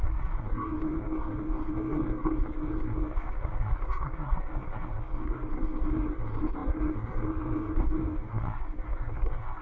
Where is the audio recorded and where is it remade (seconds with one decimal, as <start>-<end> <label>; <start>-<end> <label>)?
0.0-9.6 remade